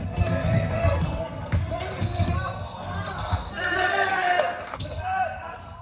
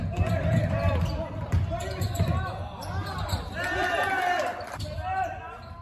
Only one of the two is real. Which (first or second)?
second